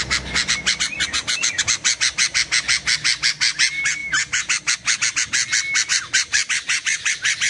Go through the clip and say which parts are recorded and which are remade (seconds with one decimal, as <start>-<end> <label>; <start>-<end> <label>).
0.0-5.9 recorded; 5.9-7.5 remade